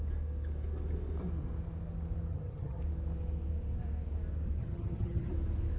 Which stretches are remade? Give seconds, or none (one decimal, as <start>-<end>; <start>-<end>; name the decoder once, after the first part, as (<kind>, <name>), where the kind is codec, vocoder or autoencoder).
2.3-2.8 (vocoder, HiFi-GAN); 4.6-5.3